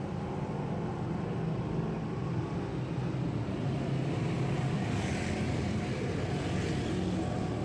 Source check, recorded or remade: recorded